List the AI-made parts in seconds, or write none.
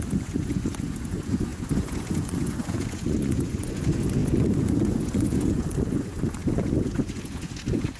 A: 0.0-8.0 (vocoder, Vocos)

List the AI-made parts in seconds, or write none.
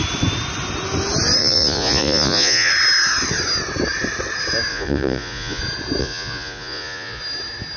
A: 1.4-2.7 (vocoder, Vocos); 4.7-5.6; 6.0-7.2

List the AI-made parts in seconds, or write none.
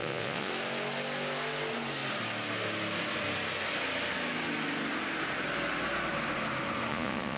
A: 0.0-0.5 (vocoder, Vocos); 6.9-7.4